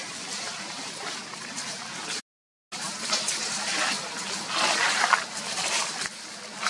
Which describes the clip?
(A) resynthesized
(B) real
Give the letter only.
B